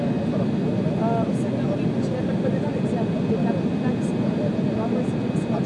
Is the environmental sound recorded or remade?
recorded